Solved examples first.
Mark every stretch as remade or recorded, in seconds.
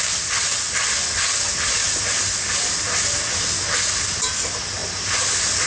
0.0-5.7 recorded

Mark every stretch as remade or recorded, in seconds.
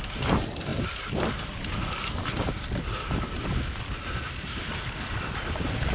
0.0-5.9 recorded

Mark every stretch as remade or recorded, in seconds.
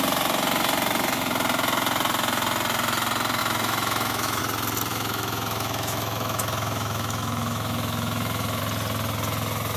0.0-3.4 recorded; 3.4-4.4 remade; 4.4-4.9 recorded; 4.9-8.6 remade; 8.6-9.8 recorded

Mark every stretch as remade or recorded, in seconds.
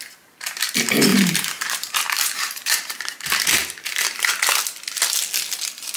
0.0-1.1 recorded; 1.1-4.3 remade; 4.3-6.0 recorded